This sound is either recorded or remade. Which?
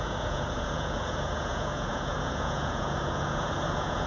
remade